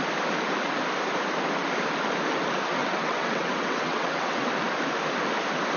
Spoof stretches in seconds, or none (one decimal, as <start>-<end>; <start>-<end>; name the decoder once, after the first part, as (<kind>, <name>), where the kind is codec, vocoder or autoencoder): 2.8-4.5 (vocoder, WaveNeXt)